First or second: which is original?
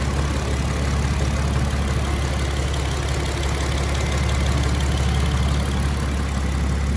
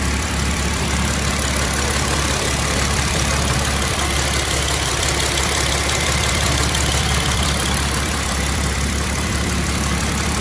first